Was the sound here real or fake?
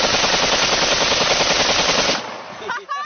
real